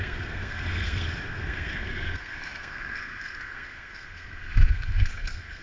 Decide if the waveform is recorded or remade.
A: remade